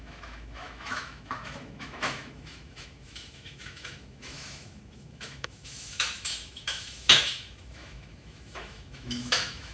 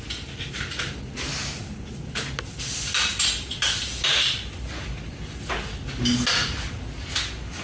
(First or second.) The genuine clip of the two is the second